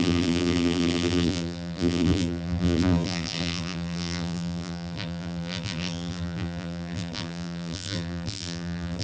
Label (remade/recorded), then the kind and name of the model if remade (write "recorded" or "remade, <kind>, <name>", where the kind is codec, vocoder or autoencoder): remade, vocoder, BigVGAN v2